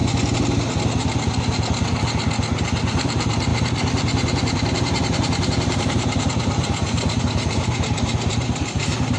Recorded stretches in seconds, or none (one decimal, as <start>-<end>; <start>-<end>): 0.0-2.6